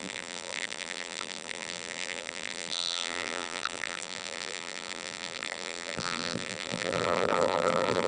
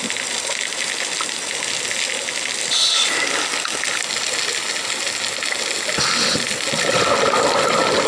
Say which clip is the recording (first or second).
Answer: second